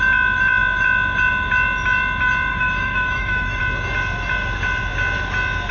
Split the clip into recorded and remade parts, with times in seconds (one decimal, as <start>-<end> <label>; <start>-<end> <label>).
0.0-2.5 recorded; 2.5-3.6 remade; 3.6-5.7 recorded